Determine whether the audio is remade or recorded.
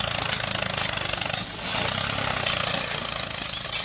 recorded